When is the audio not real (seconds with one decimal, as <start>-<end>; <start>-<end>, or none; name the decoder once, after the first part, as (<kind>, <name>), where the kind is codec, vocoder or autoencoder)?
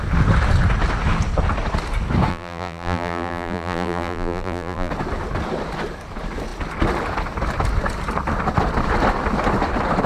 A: 2.3-4.9 (vocoder, BigVGAN v2)